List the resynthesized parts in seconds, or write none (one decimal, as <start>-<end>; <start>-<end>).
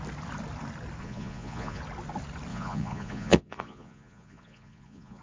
1.0-1.8; 2.5-5.2